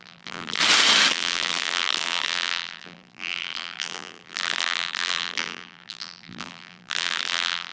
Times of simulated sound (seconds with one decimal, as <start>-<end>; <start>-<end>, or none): 0.0-0.6; 1.1-7.7